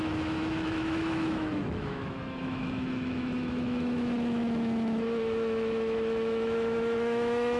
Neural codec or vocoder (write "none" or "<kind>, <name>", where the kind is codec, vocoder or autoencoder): autoencoder, DAC-VAE